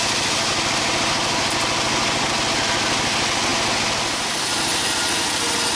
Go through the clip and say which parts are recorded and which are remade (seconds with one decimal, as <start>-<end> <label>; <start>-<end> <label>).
0.0-5.8 recorded